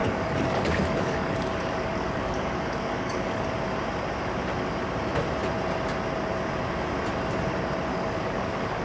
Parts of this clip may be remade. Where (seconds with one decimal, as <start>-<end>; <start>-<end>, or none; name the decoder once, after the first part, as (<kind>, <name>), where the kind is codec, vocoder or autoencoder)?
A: 0.0-3.5 (codec, DAC); 7.9-8.8

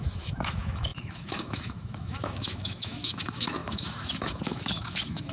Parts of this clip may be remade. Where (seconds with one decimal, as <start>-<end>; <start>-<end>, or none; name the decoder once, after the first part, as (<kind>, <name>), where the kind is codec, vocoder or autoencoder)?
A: 0.0-5.3 (autoencoder, DAC-VAE)

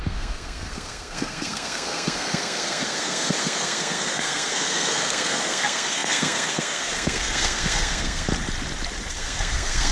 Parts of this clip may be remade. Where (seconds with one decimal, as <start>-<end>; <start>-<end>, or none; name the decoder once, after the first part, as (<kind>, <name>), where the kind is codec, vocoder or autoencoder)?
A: 0.0-8.3 (codec, SNAC); 9.1-9.9

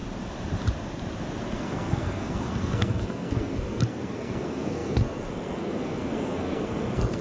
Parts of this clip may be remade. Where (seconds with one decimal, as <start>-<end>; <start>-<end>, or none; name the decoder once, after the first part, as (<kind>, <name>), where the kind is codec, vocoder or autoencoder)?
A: 1.4-7.2 (codec, SNAC)

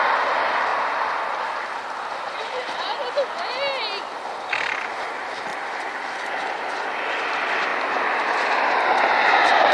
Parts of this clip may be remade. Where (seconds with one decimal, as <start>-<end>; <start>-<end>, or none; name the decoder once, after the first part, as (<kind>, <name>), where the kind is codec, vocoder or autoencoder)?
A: 7.7-8.6 (vocoder, BigVGAN v2)

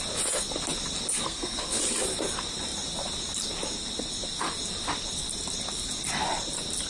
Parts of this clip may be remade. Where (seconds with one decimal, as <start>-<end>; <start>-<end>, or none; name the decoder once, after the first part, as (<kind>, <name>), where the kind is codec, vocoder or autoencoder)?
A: 1.2-1.8 (codec, SNAC)

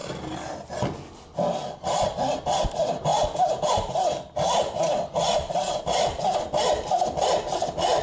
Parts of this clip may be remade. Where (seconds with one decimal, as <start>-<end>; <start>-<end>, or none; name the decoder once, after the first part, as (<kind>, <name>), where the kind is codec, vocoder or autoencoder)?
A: none